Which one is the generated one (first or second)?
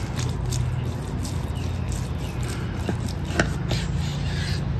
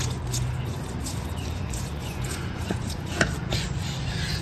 second